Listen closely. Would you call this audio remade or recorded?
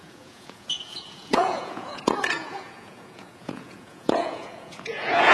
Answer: remade